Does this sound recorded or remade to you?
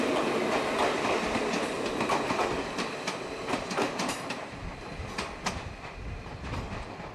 recorded